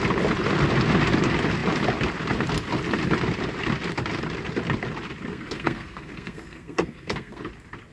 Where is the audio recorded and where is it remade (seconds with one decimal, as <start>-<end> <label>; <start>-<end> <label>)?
0.0-5.3 recorded; 5.3-7.4 remade; 7.4-7.9 recorded